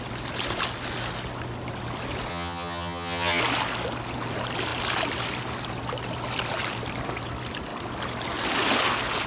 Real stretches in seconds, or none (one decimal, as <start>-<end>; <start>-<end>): 0.0-2.3; 3.4-9.3